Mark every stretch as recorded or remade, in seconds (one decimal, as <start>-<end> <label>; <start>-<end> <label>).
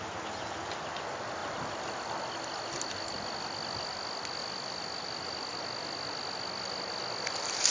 0.0-4.4 recorded; 4.4-5.6 remade; 5.6-7.7 recorded